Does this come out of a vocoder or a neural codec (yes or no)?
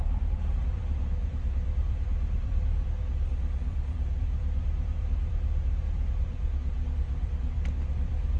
yes